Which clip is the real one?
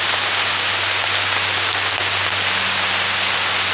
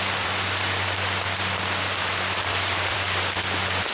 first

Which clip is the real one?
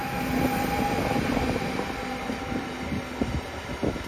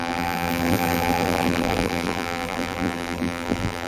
first